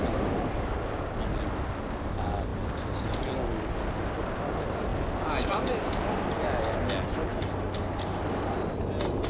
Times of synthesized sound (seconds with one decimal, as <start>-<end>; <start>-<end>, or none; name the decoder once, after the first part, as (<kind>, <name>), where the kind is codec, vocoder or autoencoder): none